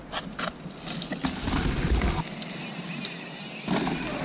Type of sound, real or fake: real